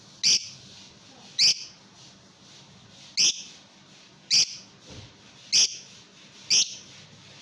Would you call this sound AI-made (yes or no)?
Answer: no